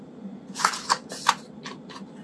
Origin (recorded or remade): recorded